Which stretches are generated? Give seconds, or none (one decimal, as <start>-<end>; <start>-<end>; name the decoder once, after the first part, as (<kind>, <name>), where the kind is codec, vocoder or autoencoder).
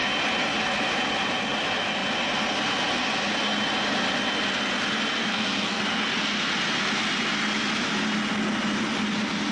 5.2-5.8 (codec, SNAC)